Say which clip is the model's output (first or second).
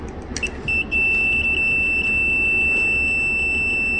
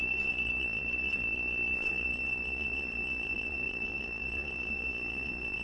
second